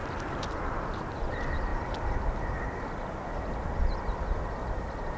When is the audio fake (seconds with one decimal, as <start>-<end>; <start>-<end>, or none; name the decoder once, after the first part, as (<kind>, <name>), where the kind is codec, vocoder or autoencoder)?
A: 0.7-1.7 (vocoder, BigVGAN v2); 4.8-5.2